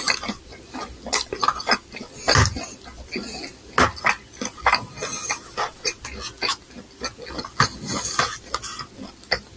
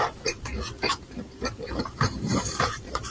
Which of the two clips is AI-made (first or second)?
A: second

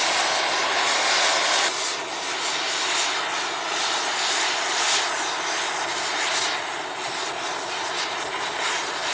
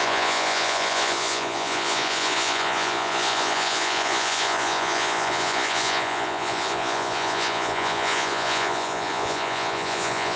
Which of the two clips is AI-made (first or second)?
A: second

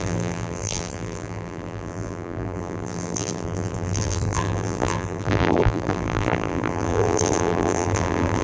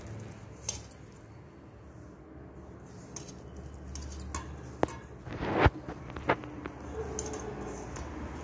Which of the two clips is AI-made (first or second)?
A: first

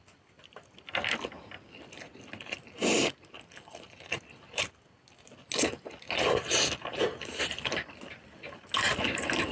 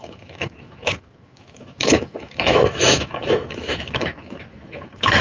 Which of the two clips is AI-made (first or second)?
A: second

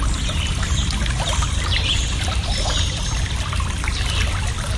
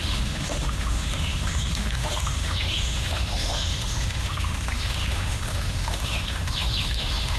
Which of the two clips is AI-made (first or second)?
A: second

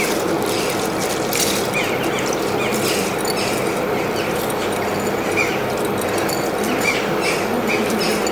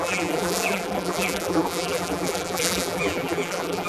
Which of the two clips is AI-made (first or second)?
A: second